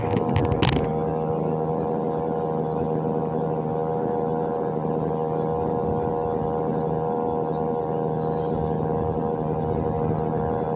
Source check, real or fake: real